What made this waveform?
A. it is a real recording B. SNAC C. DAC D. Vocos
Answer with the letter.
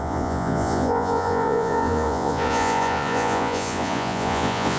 D